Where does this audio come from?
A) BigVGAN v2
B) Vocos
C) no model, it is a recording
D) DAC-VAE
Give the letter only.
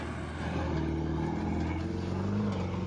C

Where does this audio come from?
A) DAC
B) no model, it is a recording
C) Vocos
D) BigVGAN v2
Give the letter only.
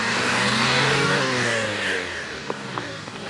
A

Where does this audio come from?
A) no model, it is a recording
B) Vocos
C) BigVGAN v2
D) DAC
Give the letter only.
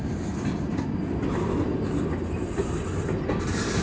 A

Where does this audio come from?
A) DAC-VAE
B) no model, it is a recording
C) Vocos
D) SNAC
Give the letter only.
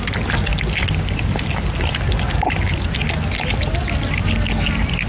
B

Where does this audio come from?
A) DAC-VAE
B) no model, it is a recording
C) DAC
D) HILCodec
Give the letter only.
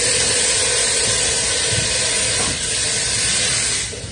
B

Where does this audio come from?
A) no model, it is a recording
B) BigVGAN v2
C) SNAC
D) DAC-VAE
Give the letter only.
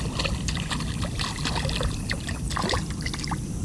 A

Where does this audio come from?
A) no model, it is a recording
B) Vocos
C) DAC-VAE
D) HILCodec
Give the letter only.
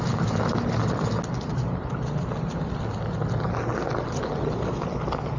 A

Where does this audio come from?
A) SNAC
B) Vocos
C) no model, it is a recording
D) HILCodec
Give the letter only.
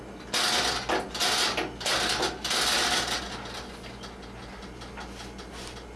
C